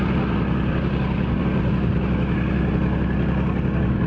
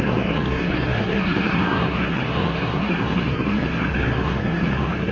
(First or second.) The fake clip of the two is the second